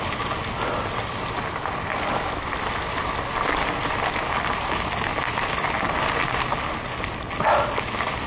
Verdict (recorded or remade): recorded